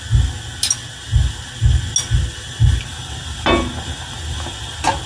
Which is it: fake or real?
real